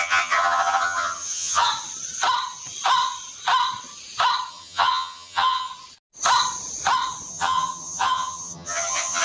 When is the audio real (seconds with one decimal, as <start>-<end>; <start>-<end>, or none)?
1.7-4.5; 5.7-7.3